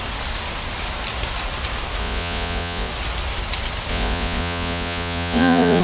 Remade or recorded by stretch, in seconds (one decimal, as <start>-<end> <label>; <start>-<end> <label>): 0.0-2.0 recorded; 2.0-2.9 remade; 2.9-3.9 recorded; 3.9-5.8 remade